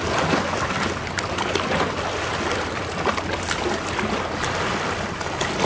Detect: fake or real real